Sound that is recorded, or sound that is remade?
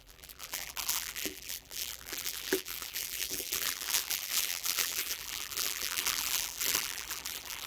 remade